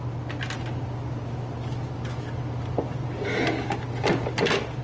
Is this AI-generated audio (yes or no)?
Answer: no